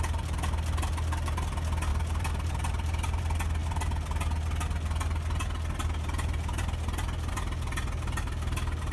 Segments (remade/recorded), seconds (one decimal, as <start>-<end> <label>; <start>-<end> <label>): 0.0-1.9 recorded; 1.9-3.2 remade; 3.2-8.9 recorded